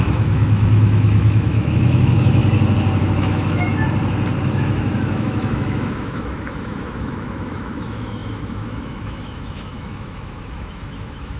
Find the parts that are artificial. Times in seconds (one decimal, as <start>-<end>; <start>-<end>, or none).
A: 0.0-2.4; 3.0-3.7; 4.6-11.4